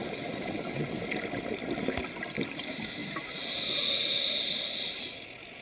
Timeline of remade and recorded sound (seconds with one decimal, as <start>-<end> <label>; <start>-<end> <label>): 0.0-1.1 remade; 1.1-5.6 recorded